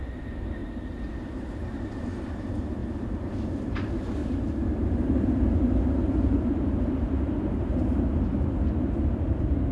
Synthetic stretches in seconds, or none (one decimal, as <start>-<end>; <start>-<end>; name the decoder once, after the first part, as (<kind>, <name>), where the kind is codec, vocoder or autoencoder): 0.6-2.1 (vocoder, BigVGAN v2); 4.2-8.0